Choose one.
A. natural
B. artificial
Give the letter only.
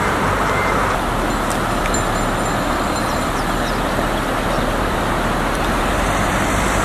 A